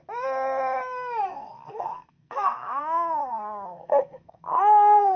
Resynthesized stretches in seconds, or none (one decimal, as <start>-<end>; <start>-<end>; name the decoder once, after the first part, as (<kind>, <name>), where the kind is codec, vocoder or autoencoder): 1.3-2.8 (codec, SNAC); 3.2-5.2